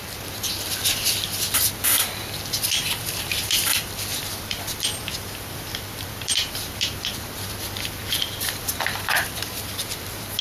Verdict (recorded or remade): remade